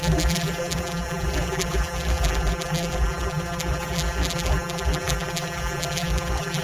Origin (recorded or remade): remade